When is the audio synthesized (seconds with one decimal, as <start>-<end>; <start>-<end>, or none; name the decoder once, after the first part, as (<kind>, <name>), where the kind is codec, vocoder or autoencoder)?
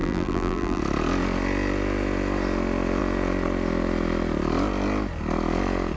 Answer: 0.0-0.8 (vocoder, BigVGAN v2)